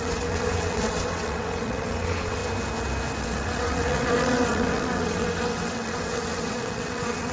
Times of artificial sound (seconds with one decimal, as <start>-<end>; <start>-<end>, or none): 0.0-2.4; 3.2-7.3